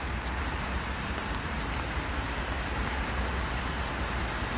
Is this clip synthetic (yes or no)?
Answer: no